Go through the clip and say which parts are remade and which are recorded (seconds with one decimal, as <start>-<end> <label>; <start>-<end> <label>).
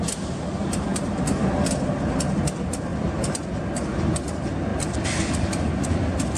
0.0-0.9 recorded; 0.9-1.9 remade; 1.9-6.4 recorded